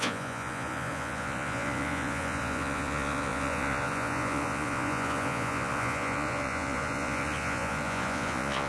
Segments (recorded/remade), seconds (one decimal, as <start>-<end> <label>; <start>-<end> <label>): 0.0-8.7 remade